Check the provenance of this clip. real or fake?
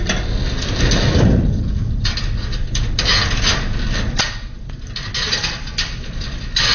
real